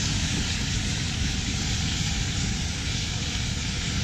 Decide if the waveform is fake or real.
fake